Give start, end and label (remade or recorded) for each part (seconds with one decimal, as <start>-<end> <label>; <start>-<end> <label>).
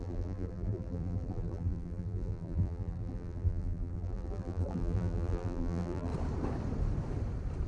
0.0-6.1 remade; 6.1-7.7 recorded